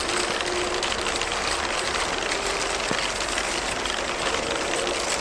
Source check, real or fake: real